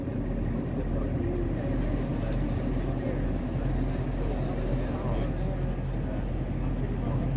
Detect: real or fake real